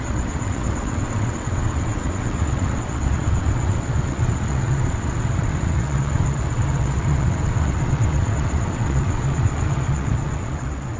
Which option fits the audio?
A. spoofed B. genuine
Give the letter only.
A